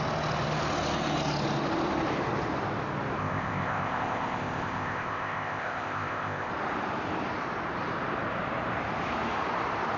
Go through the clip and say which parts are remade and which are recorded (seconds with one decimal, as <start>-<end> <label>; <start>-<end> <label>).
0.0-3.2 recorded; 3.2-6.5 remade; 6.5-10.0 recorded